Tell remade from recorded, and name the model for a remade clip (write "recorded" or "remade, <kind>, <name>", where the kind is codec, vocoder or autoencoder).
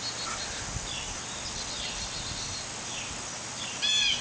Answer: recorded